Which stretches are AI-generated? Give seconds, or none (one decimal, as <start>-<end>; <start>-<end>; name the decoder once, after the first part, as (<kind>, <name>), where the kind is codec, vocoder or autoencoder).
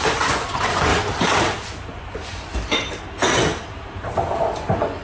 0.0-0.9 (vocoder, Vocos); 1.9-2.5; 4.4-5.0